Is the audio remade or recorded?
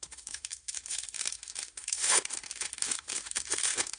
remade